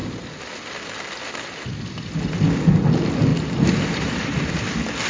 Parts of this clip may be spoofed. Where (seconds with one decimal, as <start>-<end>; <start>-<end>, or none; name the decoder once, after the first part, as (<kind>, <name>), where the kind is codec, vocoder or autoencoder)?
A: 3.3-4.6 (vocoder, BigVGAN v2)